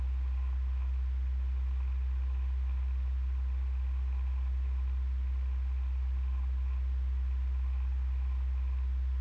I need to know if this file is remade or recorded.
recorded